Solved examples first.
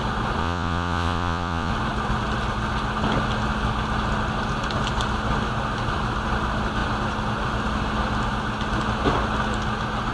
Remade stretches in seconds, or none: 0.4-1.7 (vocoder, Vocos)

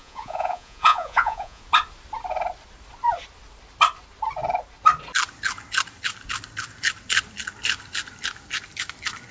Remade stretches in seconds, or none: 0.0-1.6 (vocoder, Vocos)

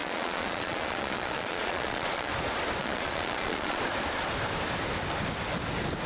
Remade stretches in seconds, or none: 0.0-2.3 (vocoder, Vocos); 2.8-3.8

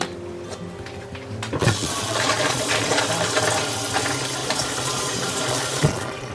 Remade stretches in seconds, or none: 1.6-3.0 (vocoder, Vocos); 4.4-6.3

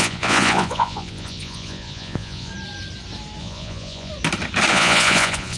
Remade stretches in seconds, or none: 0.0-2.5 (vocoder, Vocos); 3.4-4.1; 4.7-5.6

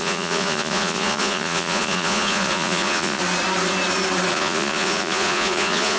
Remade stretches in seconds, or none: 0.0-3.2 (vocoder, Vocos); 4.3-6.0

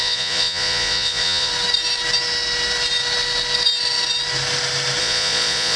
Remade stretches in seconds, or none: 0.0-1.5 (vocoder, Vocos); 5.0-5.8

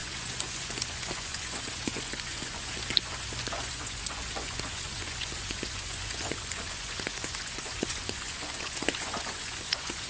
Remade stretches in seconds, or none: 0.0-10.1 (vocoder, Vocos)